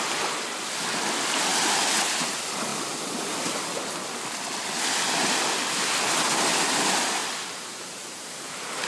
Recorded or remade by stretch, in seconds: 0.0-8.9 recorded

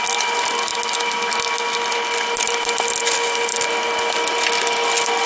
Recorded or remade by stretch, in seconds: 0.0-5.3 recorded

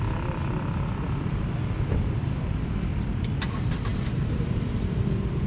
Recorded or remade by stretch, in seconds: 0.0-3.9 recorded; 3.9-5.0 remade; 5.0-5.5 recorded

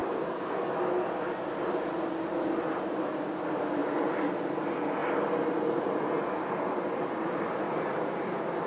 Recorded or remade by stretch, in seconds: 0.0-0.7 remade; 0.7-8.7 recorded

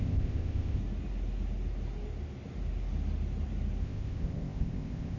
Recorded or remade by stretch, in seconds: 0.0-0.8 remade; 0.8-3.8 recorded; 3.8-5.2 remade

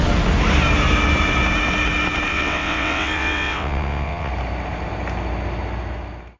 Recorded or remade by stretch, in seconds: 0.0-2.3 recorded; 2.3-4.3 remade; 4.3-6.4 recorded

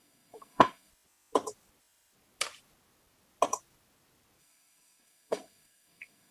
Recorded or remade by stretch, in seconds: 0.0-0.9 remade; 0.9-4.4 recorded; 4.4-6.3 remade